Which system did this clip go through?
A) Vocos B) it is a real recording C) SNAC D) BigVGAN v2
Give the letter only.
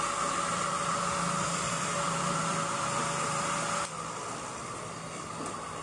D